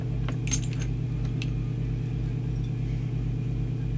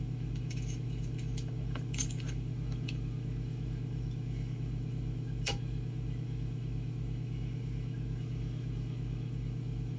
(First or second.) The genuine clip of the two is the first